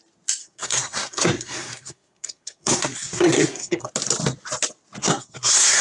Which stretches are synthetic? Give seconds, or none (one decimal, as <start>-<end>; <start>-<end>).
0.4-3.9; 5.0-5.8

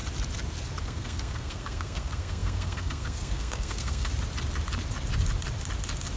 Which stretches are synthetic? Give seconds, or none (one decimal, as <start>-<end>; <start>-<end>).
0.8-4.1